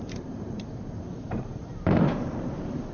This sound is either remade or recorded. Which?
remade